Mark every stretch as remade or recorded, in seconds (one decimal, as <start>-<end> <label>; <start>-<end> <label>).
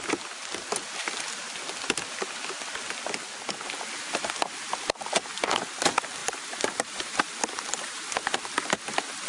0.0-6.2 recorded; 6.2-8.0 remade; 8.0-9.3 recorded